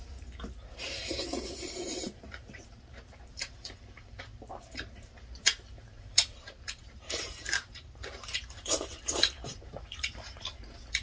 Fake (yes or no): yes